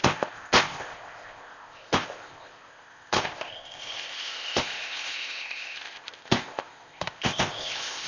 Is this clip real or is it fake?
fake